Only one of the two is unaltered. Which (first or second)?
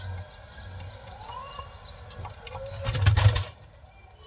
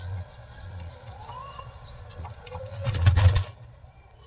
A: first